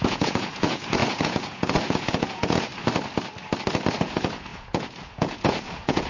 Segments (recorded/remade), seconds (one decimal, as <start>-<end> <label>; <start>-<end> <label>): 0.0-2.7 remade; 2.7-4.0 recorded; 4.0-6.1 remade